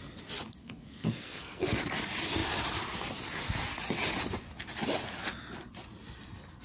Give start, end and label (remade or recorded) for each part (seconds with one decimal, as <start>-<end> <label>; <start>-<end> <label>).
0.0-0.6 recorded; 0.6-1.8 remade; 1.8-6.6 recorded

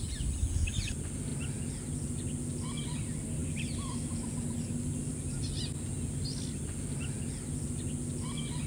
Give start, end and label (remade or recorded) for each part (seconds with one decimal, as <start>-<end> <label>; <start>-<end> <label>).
0.0-8.7 recorded